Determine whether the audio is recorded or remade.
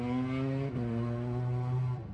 recorded